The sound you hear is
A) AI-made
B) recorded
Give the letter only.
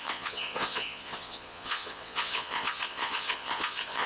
A